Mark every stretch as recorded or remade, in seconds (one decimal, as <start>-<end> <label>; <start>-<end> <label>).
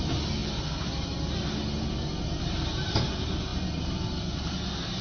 0.0-5.0 recorded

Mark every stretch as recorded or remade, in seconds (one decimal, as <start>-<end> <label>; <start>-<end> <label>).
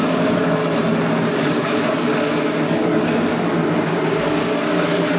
0.0-0.6 remade; 0.6-1.3 recorded; 1.3-3.6 remade; 3.6-4.2 recorded; 4.2-5.2 remade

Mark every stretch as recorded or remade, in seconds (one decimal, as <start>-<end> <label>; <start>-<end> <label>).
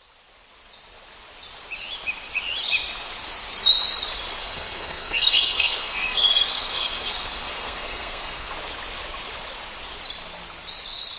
0.0-4.4 recorded; 4.4-8.5 remade; 8.5-11.2 recorded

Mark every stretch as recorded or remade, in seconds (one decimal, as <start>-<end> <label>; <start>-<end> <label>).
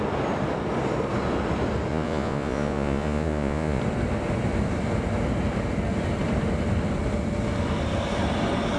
0.0-1.9 recorded; 1.9-3.8 remade; 3.8-8.8 recorded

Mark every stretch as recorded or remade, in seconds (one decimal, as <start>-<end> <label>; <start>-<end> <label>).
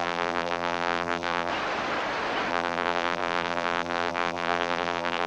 0.0-1.5 remade; 1.5-2.5 recorded; 2.5-5.3 remade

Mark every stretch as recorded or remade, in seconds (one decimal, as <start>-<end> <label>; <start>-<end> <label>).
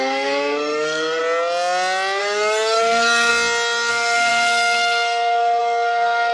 0.0-1.2 remade; 1.2-2.2 recorded; 2.2-3.3 remade; 3.3-3.9 recorded; 3.9-6.3 remade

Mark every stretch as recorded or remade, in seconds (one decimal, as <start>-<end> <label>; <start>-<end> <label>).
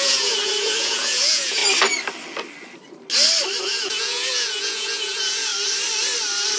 0.0-1.6 remade; 1.6-3.6 recorded; 3.6-5.5 remade; 5.5-6.6 recorded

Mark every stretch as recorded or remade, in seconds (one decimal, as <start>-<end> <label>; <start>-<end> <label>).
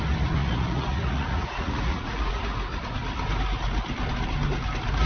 0.0-0.4 recorded; 0.4-2.3 remade; 2.3-5.1 recorded